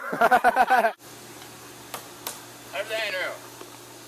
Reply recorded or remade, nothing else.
recorded